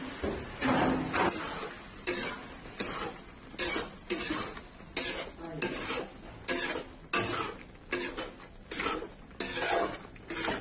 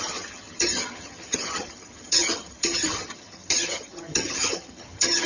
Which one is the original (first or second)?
first